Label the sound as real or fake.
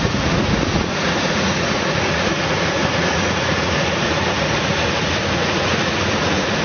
fake